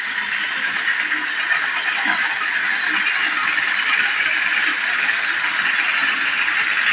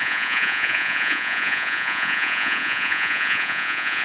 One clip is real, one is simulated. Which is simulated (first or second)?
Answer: second